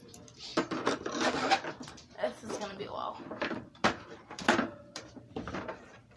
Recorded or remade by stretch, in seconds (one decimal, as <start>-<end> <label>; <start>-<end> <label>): 0.0-6.2 remade